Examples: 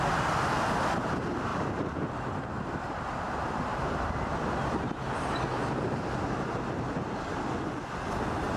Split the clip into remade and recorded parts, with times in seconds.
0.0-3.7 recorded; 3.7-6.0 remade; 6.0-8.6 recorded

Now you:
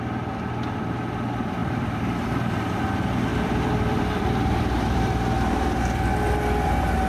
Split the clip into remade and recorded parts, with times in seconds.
0.0-1.6 recorded; 1.6-2.8 remade; 2.8-3.3 recorded; 3.3-5.8 remade; 5.8-7.1 recorded

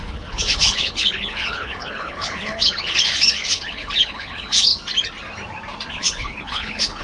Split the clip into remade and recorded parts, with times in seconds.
0.0-4.7 remade; 4.7-5.9 recorded; 5.9-7.0 remade

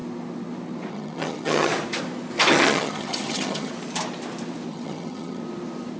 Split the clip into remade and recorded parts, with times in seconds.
0.0-0.9 recorded; 0.9-1.7 remade; 1.7-2.5 recorded; 2.5-3.7 remade; 3.7-4.7 recorded; 4.7-5.4 remade; 5.4-6.0 recorded

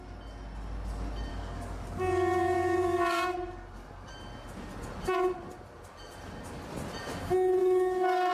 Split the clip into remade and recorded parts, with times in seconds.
0.0-1.3 recorded; 1.3-4.1 remade; 4.1-7.6 recorded; 7.6-8.3 remade